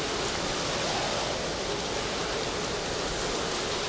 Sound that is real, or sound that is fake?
real